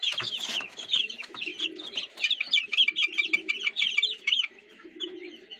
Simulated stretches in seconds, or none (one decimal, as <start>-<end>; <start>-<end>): 0.0-1.5; 4.2-5.6